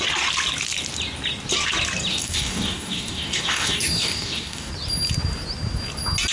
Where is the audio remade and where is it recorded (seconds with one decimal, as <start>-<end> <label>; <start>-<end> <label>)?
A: 0.0-2.1 recorded; 2.1-4.7 remade; 4.7-6.3 recorded